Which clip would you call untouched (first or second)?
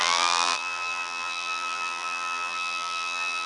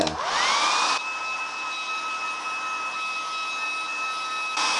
second